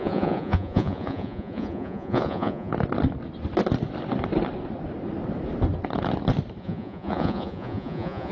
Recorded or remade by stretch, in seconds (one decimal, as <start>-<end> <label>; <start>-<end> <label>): 0.0-2.7 remade; 2.7-6.6 recorded; 6.6-8.3 remade

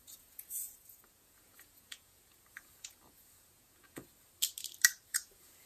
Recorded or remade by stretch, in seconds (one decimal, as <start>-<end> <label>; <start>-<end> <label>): 0.0-4.0 remade; 4.0-5.1 recorded; 5.1-5.7 remade

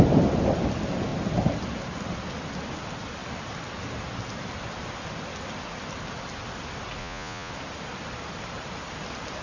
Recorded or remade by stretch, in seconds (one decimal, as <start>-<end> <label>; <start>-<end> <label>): 0.0-7.0 recorded; 7.0-7.5 remade; 7.5-9.4 recorded

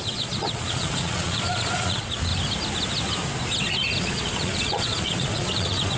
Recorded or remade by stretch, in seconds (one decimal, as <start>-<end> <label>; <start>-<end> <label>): 0.0-2.3 remade; 2.3-4.0 recorded; 4.0-6.0 remade

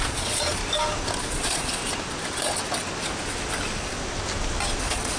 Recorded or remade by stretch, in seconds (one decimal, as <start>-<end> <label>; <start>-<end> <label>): 0.0-0.6 remade; 0.6-1.2 recorded; 1.2-1.8 remade; 1.8-4.8 recorded; 4.8-5.2 remade